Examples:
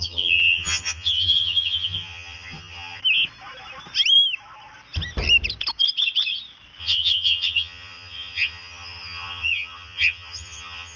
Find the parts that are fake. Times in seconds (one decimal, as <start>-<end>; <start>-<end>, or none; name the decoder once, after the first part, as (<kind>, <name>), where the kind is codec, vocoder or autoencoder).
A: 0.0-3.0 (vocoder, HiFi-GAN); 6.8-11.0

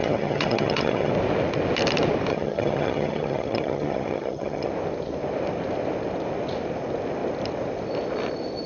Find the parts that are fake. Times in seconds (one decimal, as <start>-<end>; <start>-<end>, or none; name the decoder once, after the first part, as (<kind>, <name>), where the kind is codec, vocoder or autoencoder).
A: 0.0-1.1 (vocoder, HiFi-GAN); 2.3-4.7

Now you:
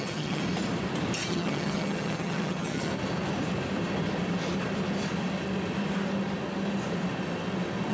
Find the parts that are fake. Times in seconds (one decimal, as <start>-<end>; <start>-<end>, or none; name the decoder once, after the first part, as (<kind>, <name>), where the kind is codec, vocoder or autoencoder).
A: 0.0-0.4 (vocoder, HiFi-GAN); 1.3-2.9

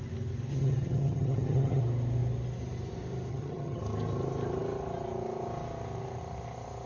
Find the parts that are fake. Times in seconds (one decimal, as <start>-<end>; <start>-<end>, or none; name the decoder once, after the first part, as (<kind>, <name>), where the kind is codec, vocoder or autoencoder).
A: 0.5-1.8 (vocoder, HiFi-GAN); 3.3-3.8